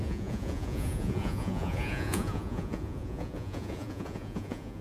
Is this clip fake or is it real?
fake